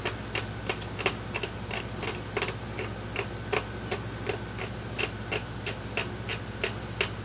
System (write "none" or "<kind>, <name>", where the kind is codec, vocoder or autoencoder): none